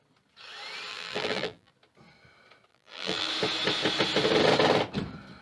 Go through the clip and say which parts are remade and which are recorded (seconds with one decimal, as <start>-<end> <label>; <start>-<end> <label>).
0.0-0.9 recorded; 0.9-1.7 remade; 1.7-2.7 recorded; 2.7-3.3 remade; 3.3-5.4 recorded